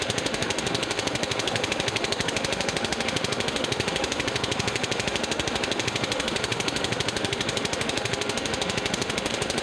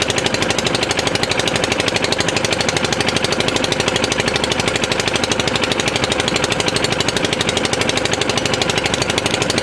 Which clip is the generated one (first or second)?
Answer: first